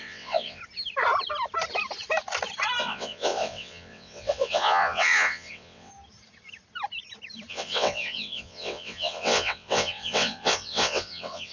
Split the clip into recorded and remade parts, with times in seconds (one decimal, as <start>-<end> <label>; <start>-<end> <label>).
0.0-0.6 remade; 0.6-2.8 recorded; 2.8-5.9 remade; 5.9-7.5 recorded; 7.5-11.5 remade